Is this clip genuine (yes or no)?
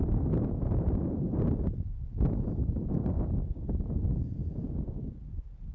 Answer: yes